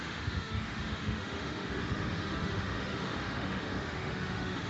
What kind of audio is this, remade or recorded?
remade